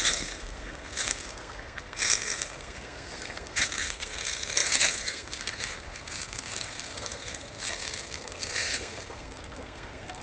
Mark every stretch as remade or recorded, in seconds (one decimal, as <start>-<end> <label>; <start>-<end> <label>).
0.0-10.2 remade